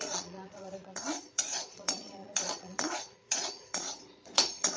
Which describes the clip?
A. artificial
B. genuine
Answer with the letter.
A